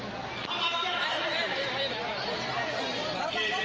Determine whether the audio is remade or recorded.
recorded